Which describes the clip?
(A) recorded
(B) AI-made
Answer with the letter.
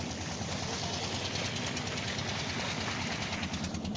A